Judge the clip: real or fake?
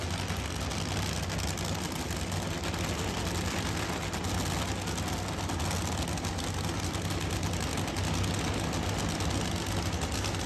real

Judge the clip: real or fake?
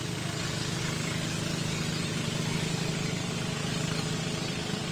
real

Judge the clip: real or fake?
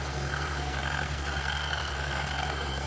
fake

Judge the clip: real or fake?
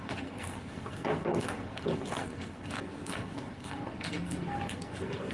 fake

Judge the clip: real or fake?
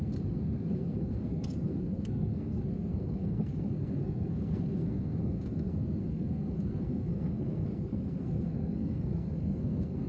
fake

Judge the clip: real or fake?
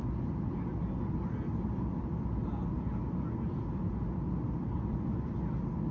real